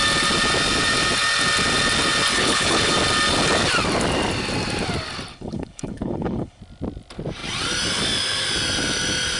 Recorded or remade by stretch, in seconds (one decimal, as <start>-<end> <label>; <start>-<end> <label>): 0.0-2.3 recorded; 2.3-2.9 remade; 2.9-5.3 recorded; 5.3-6.6 remade; 6.6-9.4 recorded